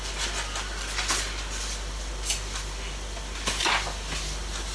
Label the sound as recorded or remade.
recorded